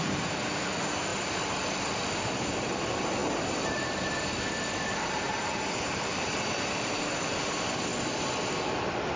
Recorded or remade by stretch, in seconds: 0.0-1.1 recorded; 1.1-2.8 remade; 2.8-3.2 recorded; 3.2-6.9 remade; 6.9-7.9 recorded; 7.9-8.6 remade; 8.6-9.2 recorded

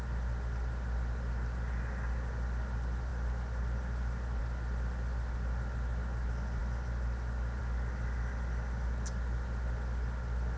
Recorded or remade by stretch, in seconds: 0.0-10.6 recorded

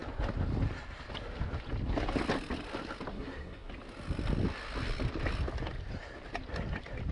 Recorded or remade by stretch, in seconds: 0.0-3.1 recorded; 3.1-3.7 remade; 3.7-7.1 recorded

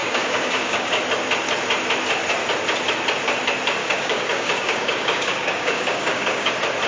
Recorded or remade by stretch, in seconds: 0.0-1.0 remade; 1.0-3.8 recorded; 3.8-6.5 remade; 6.5-6.9 recorded

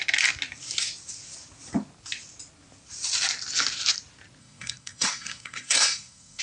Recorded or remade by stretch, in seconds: 0.0-4.4 recorded; 4.4-6.4 remade

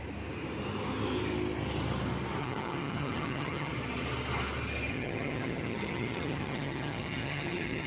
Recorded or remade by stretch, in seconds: 0.0-2.4 recorded; 2.4-3.7 remade; 3.7-4.9 recorded; 4.9-7.9 remade